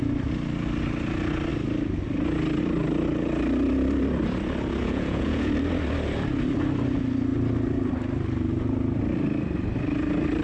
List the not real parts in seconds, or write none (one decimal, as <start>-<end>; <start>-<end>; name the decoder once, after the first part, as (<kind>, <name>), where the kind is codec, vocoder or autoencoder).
4.8-5.5 (vocoder, Vocos)